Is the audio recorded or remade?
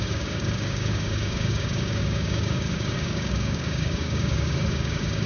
remade